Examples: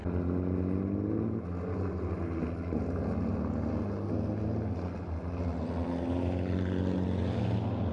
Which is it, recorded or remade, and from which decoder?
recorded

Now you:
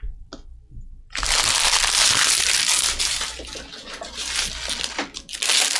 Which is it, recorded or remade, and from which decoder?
recorded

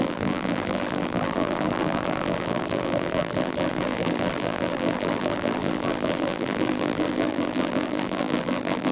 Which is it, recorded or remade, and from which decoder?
remade, vocoder, BigVGAN v2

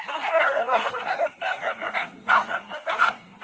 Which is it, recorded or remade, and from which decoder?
remade, codec, SNAC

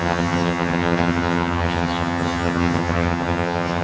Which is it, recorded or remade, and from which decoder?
remade, vocoder, HiFi-GAN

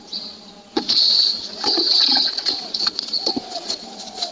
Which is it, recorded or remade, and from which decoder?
remade, vocoder, Vocos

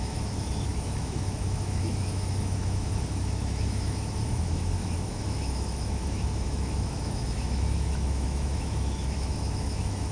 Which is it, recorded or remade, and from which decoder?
remade, autoencoder, DAC-VAE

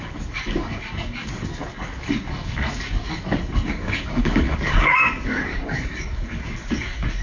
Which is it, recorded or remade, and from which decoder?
remade, codec, DAC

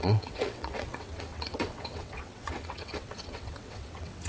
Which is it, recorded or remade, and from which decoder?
remade, vocoder, WaveNeXt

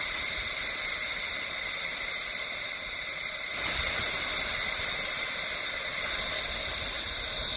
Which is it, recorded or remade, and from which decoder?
recorded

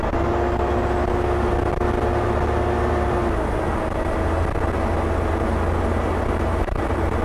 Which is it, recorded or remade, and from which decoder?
recorded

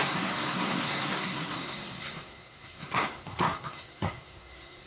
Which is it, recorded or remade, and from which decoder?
remade, codec, SNAC